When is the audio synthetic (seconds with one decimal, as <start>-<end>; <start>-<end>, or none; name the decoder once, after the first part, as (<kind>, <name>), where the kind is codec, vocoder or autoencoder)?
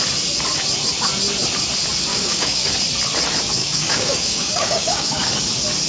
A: 2.1-2.7 (codec, DAC); 3.6-5.3